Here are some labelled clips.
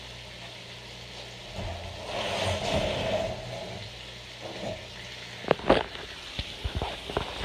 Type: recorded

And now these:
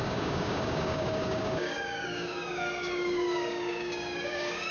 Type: remade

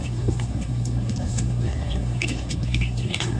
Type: remade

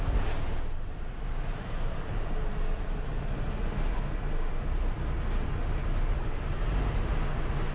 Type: recorded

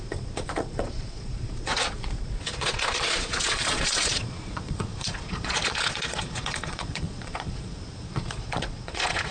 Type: remade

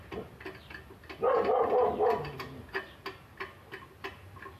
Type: remade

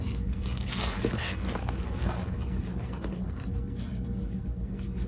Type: remade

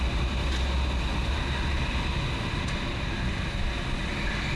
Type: recorded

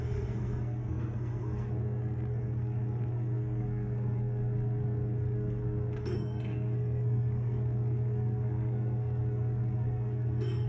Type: remade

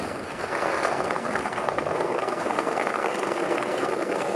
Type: remade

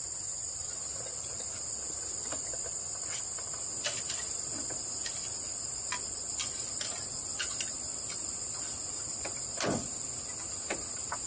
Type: recorded